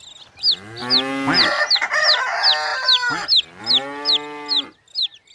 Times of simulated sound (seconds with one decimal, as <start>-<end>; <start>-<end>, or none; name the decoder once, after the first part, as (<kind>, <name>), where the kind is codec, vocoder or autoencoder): none